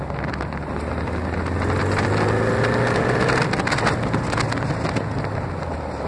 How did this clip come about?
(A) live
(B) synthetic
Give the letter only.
A